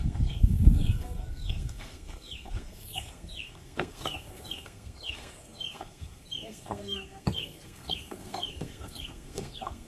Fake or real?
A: fake